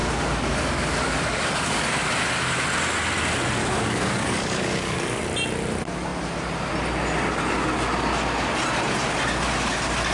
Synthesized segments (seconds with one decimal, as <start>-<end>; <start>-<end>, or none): 0.0-2.1; 3.6-5.2